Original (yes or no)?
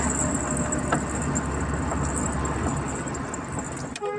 yes